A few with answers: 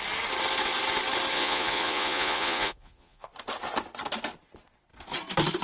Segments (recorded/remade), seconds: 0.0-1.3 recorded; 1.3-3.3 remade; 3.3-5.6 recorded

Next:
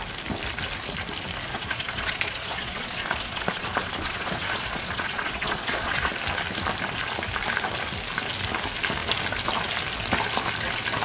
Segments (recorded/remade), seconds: 0.0-1.5 recorded; 1.5-6.1 remade; 6.1-11.0 recorded

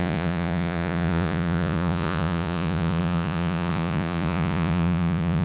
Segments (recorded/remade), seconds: 0.0-5.4 remade

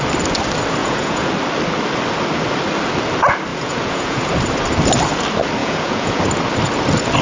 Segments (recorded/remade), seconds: 0.0-0.8 recorded; 0.8-1.3 remade; 1.3-3.5 recorded; 3.5-4.2 remade; 4.2-5.6 recorded; 5.6-6.2 remade; 6.2-7.2 recorded